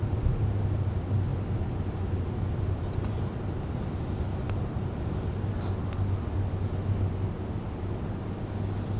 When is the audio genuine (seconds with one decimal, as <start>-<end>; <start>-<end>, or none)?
0.0-9.0